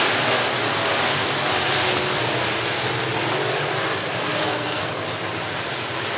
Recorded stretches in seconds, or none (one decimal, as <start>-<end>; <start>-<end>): 0.0-4.4; 4.9-6.2